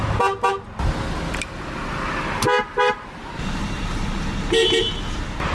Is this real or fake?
real